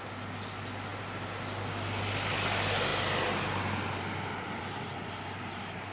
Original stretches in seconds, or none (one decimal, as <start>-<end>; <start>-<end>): 0.0-5.9